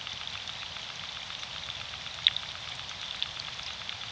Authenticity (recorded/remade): recorded